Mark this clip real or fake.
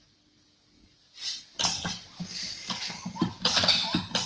real